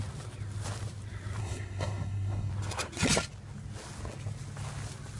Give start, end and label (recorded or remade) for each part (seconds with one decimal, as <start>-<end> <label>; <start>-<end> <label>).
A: 0.0-1.4 recorded; 1.4-2.5 remade; 2.5-5.2 recorded